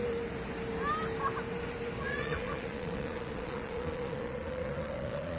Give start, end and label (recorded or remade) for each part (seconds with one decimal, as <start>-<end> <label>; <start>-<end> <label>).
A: 0.0-2.0 recorded; 2.0-5.4 remade